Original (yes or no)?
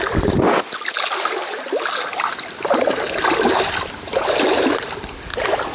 yes